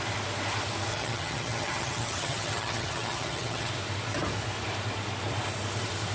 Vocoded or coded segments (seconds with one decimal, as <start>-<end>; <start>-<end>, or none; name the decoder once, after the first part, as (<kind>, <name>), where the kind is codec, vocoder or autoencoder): 0.9-3.7 (vocoder, HiFi-GAN)